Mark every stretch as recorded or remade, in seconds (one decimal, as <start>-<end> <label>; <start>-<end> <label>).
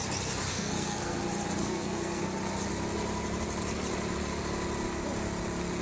0.0-0.5 recorded; 0.5-1.2 remade; 1.2-1.6 recorded; 1.6-2.2 remade; 2.2-5.8 recorded